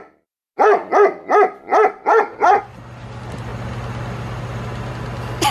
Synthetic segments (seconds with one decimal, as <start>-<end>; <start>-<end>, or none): 1.7-2.6